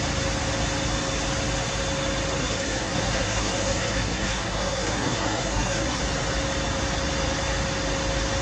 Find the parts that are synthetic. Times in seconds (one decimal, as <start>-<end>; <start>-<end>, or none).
2.4-6.0